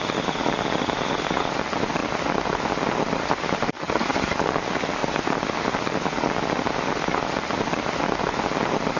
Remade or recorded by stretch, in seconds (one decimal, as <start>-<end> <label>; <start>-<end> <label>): 0.0-9.0 recorded